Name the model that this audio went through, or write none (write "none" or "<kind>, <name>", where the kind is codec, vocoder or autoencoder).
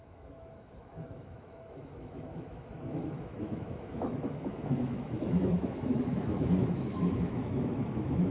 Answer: autoencoder, DAC-VAE